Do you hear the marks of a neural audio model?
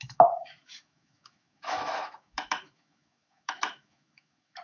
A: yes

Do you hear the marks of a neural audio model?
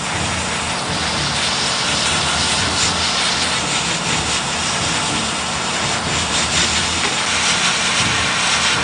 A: no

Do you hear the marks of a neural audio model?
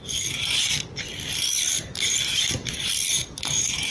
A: no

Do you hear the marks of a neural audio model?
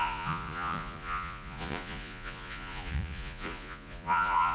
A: yes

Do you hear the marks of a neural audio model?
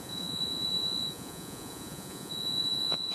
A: yes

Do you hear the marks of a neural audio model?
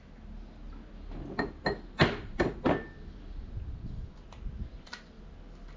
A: no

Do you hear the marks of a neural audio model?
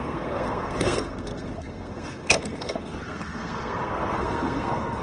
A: yes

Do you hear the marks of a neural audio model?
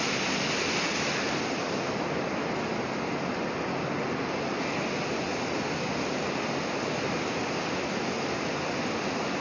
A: no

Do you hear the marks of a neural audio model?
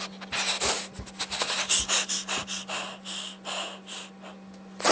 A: no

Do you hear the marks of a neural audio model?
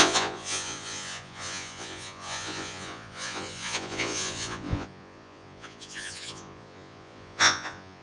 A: yes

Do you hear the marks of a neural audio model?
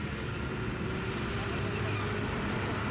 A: no